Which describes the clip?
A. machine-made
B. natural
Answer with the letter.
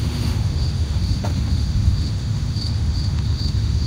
A